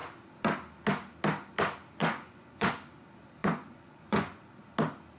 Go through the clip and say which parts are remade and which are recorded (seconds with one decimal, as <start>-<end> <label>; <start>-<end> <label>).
0.0-2.0 recorded; 2.0-2.7 remade; 2.7-3.4 recorded; 3.4-4.5 remade; 4.5-5.2 recorded